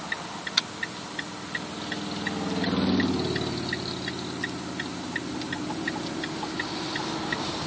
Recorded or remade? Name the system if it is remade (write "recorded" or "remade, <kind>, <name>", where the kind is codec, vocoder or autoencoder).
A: recorded